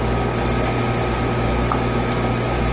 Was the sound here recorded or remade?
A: recorded